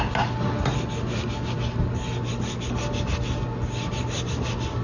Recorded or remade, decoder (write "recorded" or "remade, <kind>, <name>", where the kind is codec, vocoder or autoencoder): recorded